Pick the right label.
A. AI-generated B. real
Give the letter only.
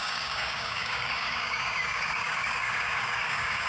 A